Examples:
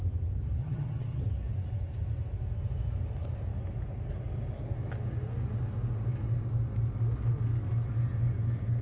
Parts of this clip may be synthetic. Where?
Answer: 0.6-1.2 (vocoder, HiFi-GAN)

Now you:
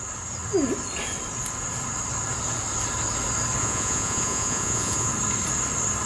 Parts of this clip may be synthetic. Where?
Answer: 3.6-5.1 (vocoder, Vocos)

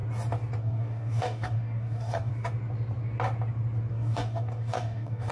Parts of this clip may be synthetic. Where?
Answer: 0.6-2.3 (codec, DAC); 3.9-5.3

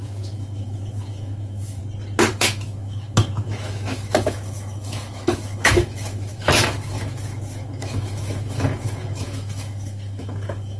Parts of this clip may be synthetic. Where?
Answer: 0.0-1.8 (autoencoder, DAC-VAE); 2.3-10.8

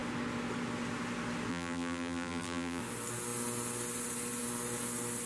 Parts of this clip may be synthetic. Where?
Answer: 1.5-2.8 (vocoder, BigVGAN v2)

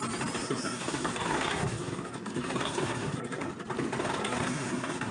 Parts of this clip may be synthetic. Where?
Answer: 0.4-3.5 (codec, SNAC); 4.2-5.1

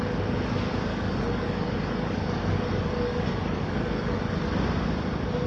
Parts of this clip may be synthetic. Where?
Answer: 0.9-4.2 (codec, DAC)